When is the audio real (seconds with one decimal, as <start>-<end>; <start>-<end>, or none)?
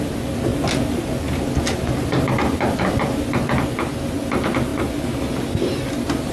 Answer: 0.0-6.3